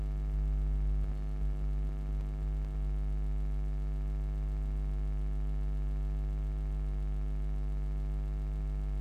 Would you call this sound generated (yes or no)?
no